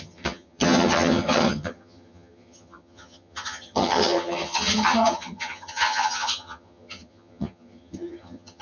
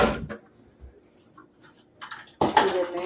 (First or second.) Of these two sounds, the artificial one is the first